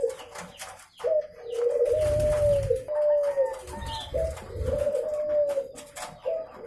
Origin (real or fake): real